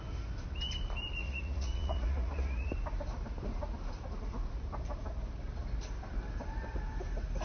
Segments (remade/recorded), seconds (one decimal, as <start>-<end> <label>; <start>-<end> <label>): 0.0-1.2 recorded; 1.2-2.7 remade; 2.7-7.4 recorded